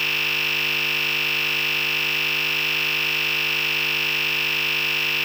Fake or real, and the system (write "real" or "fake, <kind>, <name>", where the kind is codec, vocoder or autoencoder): real